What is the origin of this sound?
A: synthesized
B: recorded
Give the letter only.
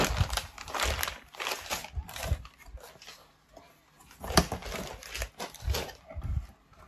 B